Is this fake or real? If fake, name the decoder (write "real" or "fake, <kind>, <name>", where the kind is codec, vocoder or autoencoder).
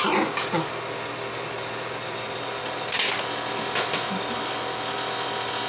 real